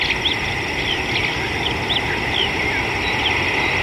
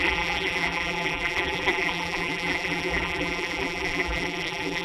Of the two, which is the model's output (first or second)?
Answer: second